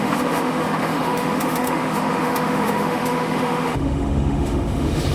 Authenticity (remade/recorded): remade